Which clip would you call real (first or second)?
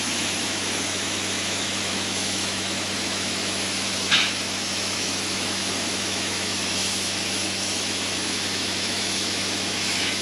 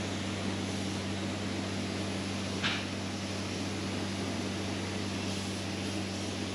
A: second